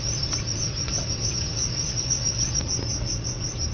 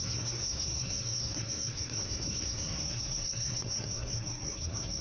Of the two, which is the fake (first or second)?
second